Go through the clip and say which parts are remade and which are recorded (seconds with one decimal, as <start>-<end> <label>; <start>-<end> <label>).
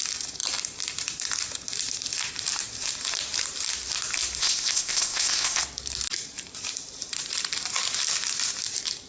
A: 0.0-4.4 recorded; 4.4-5.6 remade; 5.6-9.1 recorded